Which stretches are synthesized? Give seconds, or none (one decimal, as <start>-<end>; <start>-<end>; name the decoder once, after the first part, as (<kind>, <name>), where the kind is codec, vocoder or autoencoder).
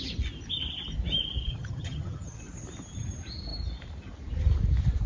1.5-2.4 (vocoder, HiFi-GAN)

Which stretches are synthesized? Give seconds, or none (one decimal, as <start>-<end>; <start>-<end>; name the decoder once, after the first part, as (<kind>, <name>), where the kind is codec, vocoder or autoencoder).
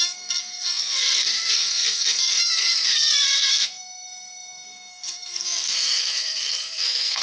0.0-7.2 (codec, SNAC)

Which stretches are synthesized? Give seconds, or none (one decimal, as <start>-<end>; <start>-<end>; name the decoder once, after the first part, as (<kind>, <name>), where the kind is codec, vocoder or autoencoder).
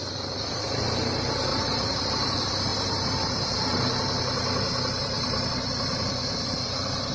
1.5-2.1 (vocoder, BigVGAN v2); 2.7-3.8; 5.0-5.5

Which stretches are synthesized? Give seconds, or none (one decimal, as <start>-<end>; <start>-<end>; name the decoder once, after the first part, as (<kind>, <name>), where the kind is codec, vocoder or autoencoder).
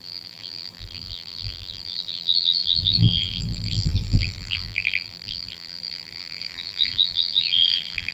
0.0-8.1 (vocoder, BigVGAN v2)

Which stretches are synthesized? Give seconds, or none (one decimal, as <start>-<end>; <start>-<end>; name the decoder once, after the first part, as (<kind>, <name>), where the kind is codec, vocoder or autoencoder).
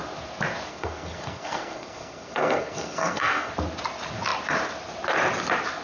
0.7-3.5 (codec, SNAC)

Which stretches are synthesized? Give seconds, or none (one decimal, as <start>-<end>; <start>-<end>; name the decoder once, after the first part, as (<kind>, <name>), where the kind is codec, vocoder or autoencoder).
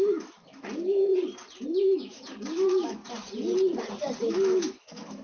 0.0-1.1 (autoencoder, DAC-VAE); 1.8-3.0; 4.2-5.2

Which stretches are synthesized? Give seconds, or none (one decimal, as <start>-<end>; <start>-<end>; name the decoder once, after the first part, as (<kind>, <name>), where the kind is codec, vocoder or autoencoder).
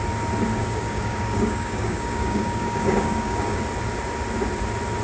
0.6-3.6 (codec, DAC)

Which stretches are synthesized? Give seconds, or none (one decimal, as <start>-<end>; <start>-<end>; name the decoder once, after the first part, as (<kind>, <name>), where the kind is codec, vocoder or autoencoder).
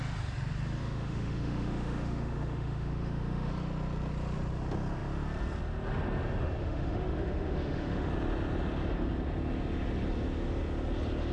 0.8-3.5 (autoencoder, DAC-VAE); 6.6-8.1